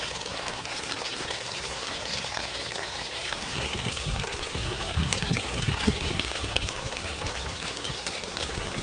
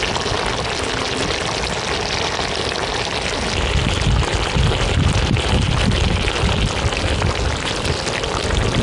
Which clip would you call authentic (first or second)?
second